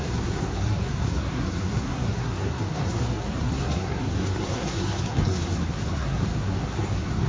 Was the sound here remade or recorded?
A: remade